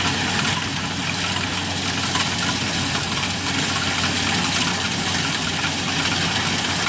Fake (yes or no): no